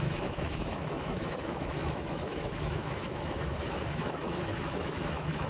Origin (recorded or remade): remade